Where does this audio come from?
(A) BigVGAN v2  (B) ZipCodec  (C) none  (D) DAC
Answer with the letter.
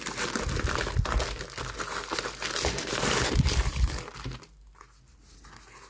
C